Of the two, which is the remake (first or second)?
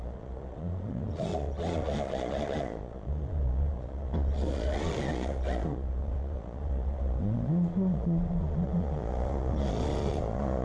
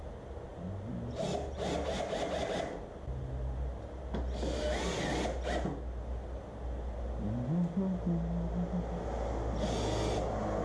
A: first